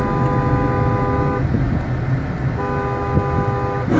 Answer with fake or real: real